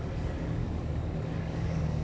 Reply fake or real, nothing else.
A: fake